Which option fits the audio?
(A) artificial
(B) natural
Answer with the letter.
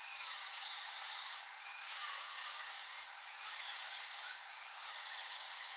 A